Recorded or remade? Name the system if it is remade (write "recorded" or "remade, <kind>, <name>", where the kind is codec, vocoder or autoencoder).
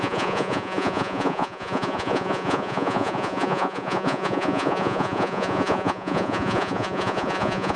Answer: remade, vocoder, Vocos